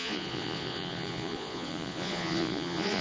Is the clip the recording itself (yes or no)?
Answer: no